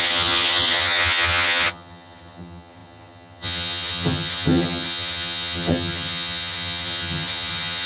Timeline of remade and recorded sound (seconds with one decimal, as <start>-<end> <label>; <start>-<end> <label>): 0.0-7.9 remade